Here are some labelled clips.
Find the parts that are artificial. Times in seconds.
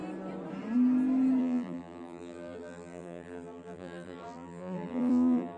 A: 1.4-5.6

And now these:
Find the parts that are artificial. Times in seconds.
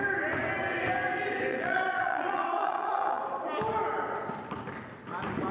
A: 1.5-3.2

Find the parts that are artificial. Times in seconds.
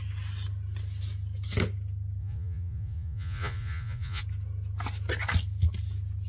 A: 2.2-4.2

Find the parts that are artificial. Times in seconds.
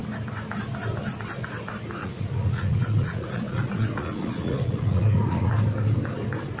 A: 2.0-5.5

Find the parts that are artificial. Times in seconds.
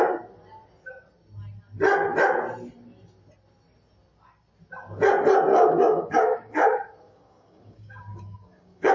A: 5.5-8.9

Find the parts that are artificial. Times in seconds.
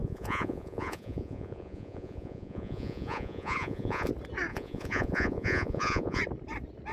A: 0.0-4.1; 4.5-6.2